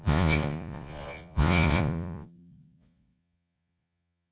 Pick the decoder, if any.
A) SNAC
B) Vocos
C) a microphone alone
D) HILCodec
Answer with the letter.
B